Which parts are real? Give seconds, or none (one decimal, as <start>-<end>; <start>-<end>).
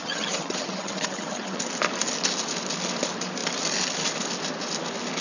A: 1.6-5.2